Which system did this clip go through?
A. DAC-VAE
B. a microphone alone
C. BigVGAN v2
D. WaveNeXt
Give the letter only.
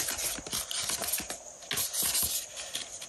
B